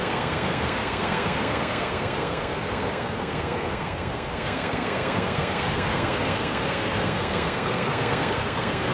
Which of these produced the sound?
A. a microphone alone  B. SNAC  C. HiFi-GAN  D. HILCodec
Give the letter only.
B